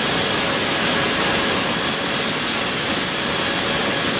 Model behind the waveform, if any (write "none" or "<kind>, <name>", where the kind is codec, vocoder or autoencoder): none